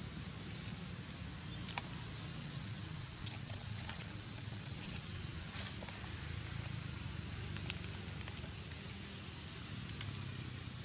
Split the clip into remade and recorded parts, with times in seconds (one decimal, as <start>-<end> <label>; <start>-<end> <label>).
0.0-2.3 recorded; 2.3-5.5 remade; 5.5-10.8 recorded